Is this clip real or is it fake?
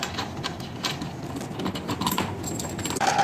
real